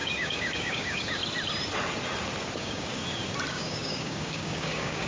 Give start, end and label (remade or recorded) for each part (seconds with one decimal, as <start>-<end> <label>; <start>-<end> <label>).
0.0-1.2 remade; 1.2-2.6 recorded; 2.6-3.0 remade; 3.0-3.5 recorded; 3.5-5.1 remade